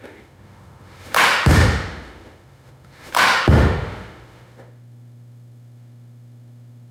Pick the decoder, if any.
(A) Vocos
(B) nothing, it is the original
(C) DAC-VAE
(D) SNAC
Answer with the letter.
C